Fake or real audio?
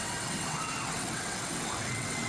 fake